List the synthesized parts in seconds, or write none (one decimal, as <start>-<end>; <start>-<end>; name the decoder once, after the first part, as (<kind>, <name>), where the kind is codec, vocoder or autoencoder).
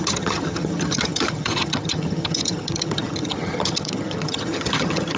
0.0-5.2 (vocoder, HiFi-GAN)